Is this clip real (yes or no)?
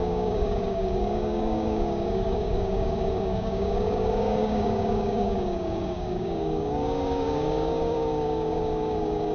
no